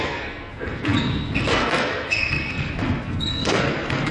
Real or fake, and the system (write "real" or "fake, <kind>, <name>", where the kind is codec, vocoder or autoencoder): fake, codec, SNAC